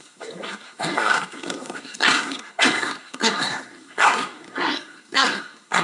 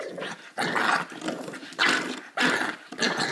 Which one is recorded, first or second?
second